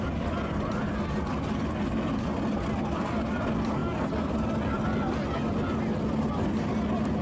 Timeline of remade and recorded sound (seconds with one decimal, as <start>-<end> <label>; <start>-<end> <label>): 0.0-1.3 remade; 1.3-3.0 recorded; 3.0-3.8 remade; 3.8-6.2 recorded; 6.2-7.2 remade